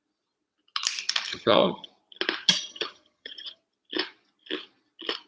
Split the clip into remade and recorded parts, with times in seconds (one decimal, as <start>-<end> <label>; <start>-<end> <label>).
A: 0.0-1.3 recorded; 1.3-1.9 remade; 1.9-2.7 recorded; 2.7-3.6 remade; 3.6-5.3 recorded